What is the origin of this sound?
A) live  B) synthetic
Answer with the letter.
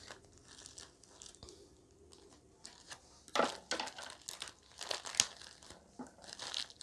A